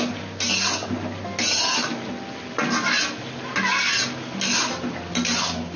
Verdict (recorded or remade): recorded